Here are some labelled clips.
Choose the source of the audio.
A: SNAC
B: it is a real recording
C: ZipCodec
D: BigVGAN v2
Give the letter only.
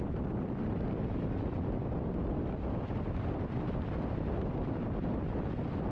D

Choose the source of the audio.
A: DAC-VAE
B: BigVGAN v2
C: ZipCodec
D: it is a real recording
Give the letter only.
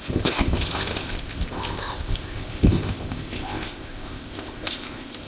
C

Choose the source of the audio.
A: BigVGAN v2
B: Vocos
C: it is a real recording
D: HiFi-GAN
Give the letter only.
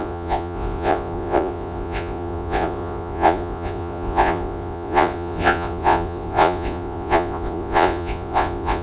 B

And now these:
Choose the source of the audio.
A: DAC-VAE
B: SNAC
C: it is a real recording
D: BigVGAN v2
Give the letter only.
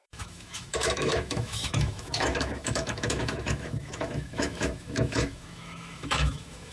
A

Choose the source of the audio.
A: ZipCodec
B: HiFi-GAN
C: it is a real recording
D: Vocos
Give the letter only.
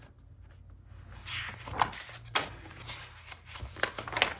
C